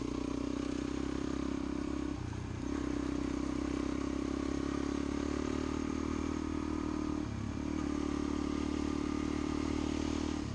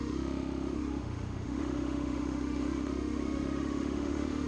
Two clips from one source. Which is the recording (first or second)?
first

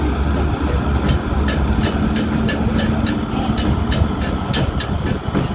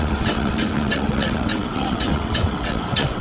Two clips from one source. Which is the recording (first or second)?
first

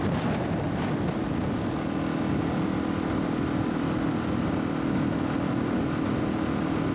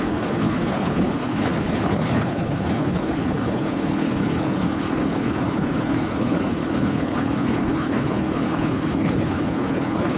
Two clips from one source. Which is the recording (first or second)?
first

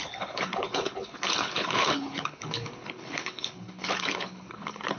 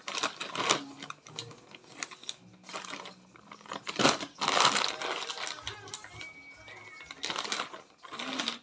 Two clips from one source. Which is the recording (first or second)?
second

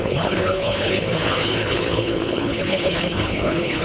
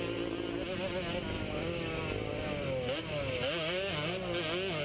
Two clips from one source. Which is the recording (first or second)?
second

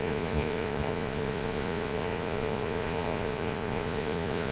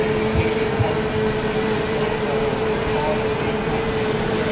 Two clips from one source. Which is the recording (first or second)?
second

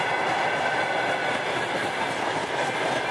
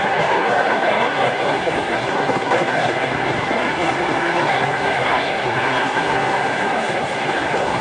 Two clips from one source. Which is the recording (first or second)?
first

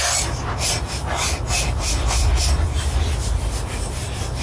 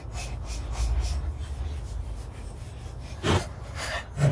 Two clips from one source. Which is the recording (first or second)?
second